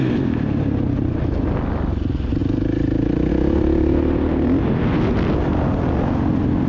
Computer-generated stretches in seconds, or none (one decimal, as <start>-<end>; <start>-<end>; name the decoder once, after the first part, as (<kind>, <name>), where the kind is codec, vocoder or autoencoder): none